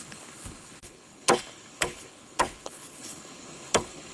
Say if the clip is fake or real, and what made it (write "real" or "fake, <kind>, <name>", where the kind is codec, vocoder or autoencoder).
fake, codec, HILCodec